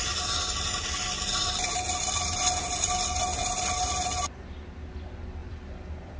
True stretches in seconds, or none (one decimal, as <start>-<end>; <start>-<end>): 0.0-5.4